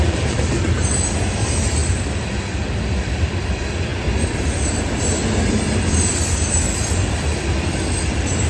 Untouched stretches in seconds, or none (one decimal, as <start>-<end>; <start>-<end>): 3.9-5.5